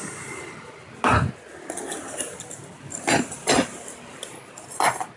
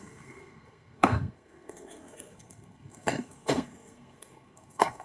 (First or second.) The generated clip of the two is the second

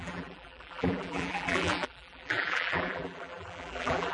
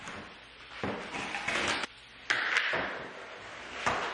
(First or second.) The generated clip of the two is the first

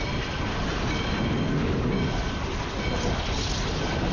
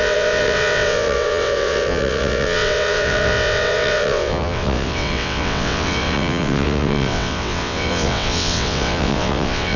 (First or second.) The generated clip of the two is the second